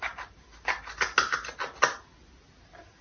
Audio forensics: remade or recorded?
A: recorded